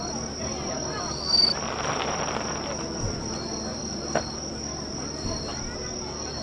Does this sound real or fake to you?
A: real